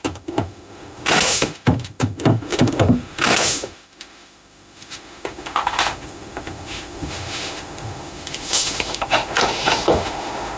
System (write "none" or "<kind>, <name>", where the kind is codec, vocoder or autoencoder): autoencoder, DAC-VAE